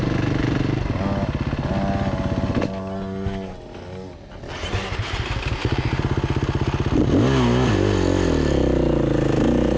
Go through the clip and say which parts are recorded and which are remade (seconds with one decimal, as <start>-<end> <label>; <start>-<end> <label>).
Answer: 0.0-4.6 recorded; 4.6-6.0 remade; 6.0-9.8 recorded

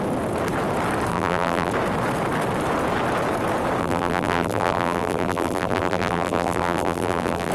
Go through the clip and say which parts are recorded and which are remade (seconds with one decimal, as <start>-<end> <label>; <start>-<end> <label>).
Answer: 0.0-1.1 recorded; 1.1-1.7 remade; 1.7-3.8 recorded; 3.8-7.5 remade

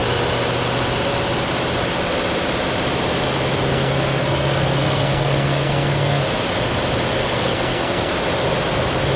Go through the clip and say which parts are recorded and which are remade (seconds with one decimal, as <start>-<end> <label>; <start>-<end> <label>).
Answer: 0.0-3.7 recorded; 3.7-6.2 remade; 6.2-7.2 recorded; 7.2-8.1 remade; 8.1-9.2 recorded